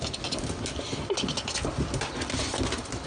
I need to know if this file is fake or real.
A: real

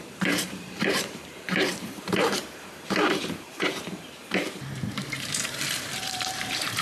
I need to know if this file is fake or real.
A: fake